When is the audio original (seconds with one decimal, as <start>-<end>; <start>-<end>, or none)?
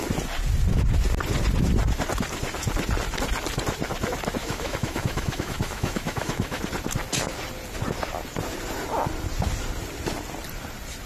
0.0-4.4; 6.6-11.1